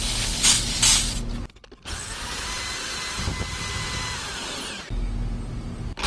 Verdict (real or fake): real